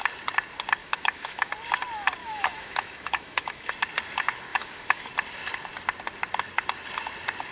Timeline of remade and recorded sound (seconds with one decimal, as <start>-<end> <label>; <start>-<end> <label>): 0.0-0.8 recorded; 0.8-1.5 remade; 1.5-2.2 recorded; 2.2-3.7 remade; 3.7-4.5 recorded; 4.5-5.1 remade; 5.1-7.5 recorded

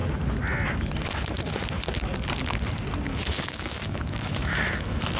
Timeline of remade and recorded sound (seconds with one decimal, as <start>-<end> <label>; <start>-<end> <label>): 0.0-3.1 recorded; 3.1-5.2 remade

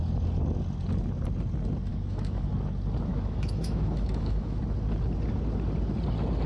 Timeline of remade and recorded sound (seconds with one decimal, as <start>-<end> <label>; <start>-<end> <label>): 0.0-1.9 recorded; 1.9-2.5 remade; 2.5-3.1 recorded; 3.1-4.6 remade; 4.6-6.5 recorded